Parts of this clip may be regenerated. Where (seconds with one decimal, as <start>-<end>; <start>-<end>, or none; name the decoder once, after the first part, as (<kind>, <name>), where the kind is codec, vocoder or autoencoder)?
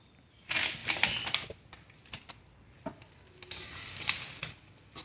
none